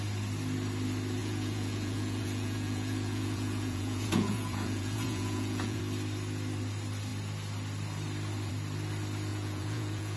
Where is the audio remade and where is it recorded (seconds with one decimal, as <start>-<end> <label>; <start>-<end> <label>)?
0.0-1.2 recorded; 1.2-5.8 remade; 5.8-9.3 recorded; 9.3-10.2 remade